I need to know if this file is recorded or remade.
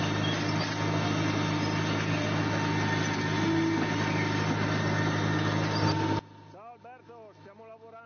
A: recorded